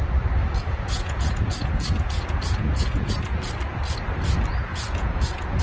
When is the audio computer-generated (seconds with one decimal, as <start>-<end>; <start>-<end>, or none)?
0.4-3.1; 4.7-5.6